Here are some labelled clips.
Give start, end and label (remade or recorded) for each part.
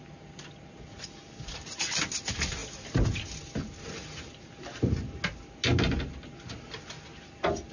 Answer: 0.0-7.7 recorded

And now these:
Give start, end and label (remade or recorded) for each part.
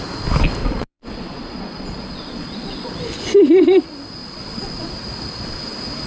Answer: 0.0-0.6 recorded; 0.6-2.9 remade; 2.9-4.2 recorded; 4.2-4.9 remade; 4.9-6.1 recorded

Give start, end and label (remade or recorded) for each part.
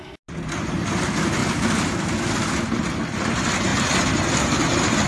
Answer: 0.0-1.4 recorded; 1.4-2.8 remade; 2.8-5.1 recorded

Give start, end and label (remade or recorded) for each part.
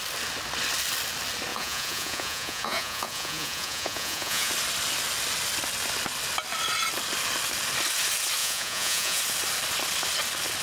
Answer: 0.0-1.5 recorded; 1.5-4.5 remade; 4.5-8.4 recorded; 8.4-9.2 remade; 9.2-10.6 recorded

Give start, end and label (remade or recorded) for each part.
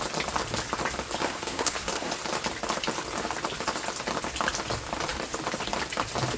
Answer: 0.0-1.2 recorded; 1.2-2.1 remade; 2.1-6.4 recorded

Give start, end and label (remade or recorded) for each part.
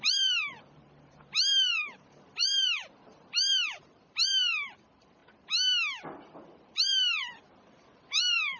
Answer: 0.0-5.2 remade; 5.2-6.4 recorded; 6.4-8.6 remade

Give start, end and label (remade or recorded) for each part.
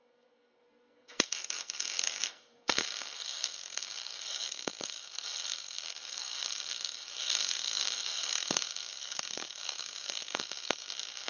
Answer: 0.0-11.3 remade